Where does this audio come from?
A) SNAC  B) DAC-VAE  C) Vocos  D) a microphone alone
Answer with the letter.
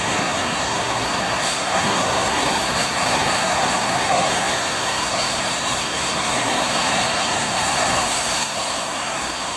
A